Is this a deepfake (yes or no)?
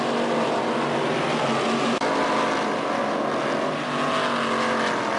no